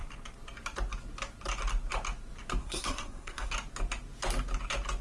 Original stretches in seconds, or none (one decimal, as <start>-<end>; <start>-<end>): 0.0-2.6; 3.5-5.0